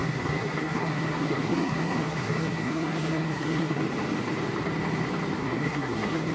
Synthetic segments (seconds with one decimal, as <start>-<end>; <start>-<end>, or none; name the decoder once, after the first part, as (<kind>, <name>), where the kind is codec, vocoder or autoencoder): 0.0-3.8 (codec, SNAC); 5.4-6.3